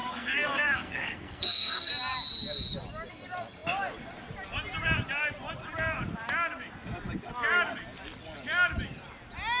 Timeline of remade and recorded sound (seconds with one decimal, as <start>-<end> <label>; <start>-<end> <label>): 0.0-1.9 remade; 1.9-9.6 recorded